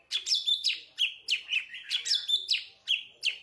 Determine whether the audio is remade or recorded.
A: recorded